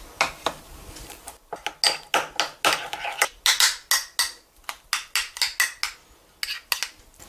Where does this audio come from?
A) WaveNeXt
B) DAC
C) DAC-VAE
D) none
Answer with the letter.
D